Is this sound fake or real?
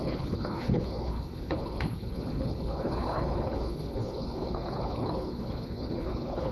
fake